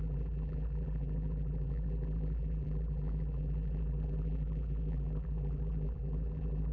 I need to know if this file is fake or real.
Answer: fake